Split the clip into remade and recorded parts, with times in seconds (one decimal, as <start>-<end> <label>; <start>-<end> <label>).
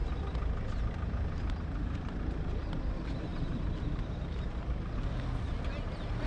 0.0-1.5 recorded; 1.5-6.3 remade